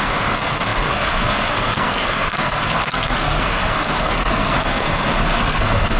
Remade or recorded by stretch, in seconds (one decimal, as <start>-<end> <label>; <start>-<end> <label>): 0.0-6.0 remade

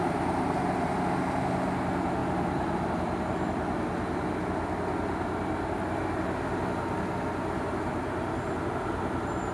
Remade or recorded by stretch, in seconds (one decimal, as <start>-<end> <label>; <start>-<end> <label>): 0.0-7.9 recorded; 7.9-8.7 remade; 8.7-9.5 recorded

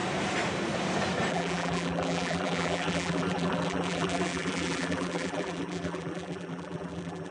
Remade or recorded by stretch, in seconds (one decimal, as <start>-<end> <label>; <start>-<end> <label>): 0.0-1.3 recorded; 1.3-7.3 remade

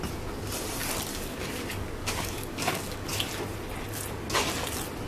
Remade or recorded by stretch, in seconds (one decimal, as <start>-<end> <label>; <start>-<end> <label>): 0.0-1.1 recorded; 1.1-3.1 remade; 3.1-5.1 recorded